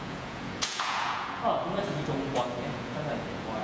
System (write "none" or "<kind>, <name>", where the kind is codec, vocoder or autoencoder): vocoder, Vocos